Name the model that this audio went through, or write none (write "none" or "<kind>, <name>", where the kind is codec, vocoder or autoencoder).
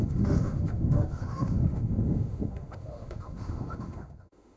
autoencoder, DAC-VAE